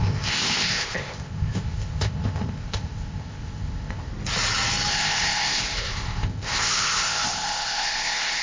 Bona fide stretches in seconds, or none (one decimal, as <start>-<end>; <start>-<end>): 4.1-4.9